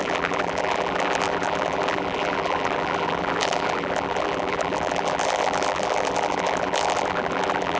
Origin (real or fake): fake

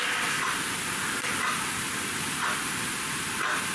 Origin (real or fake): real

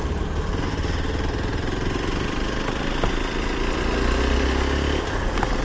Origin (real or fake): real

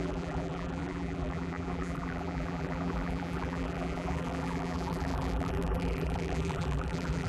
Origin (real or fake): fake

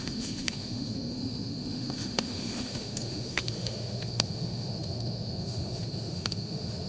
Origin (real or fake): fake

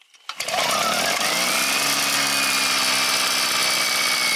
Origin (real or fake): real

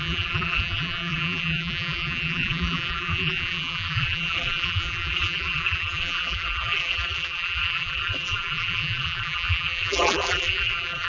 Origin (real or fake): fake